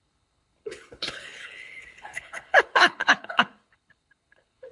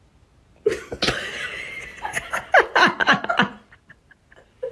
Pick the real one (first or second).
second